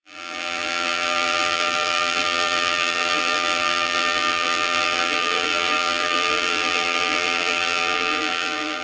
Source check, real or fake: fake